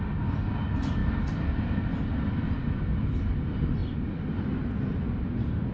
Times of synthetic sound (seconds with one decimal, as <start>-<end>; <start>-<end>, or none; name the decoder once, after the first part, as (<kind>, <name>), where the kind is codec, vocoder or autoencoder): none